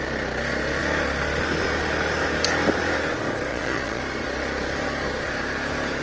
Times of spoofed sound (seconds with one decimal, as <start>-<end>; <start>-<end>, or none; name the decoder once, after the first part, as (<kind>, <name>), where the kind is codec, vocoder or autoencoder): 3.5-4.0 (vocoder, Vocos)